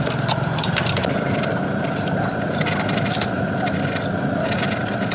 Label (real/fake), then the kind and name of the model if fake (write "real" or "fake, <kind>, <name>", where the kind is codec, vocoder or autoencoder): real